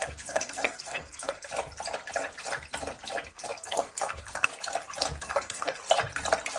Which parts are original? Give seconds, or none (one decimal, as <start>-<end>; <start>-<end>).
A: 1.5-3.3; 4.5-5.2; 5.8-6.6